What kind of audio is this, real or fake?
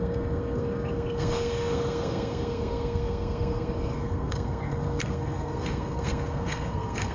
fake